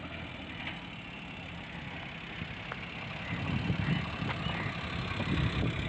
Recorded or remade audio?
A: recorded